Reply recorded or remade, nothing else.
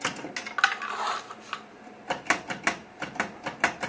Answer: recorded